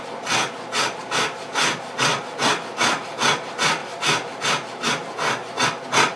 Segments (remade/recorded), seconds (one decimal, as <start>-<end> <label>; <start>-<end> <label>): 0.0-6.2 recorded